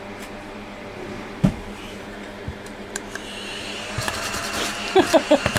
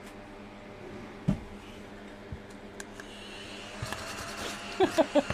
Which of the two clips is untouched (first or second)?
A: second